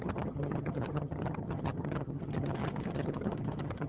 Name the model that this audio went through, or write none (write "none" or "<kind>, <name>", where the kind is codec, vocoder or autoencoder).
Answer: vocoder, HiFi-GAN